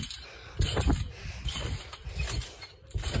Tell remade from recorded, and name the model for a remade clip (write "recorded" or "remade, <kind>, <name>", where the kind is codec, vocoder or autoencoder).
recorded